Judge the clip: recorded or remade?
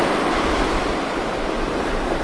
remade